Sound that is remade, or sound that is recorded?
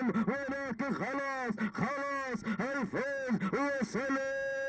recorded